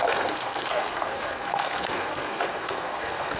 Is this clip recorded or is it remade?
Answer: remade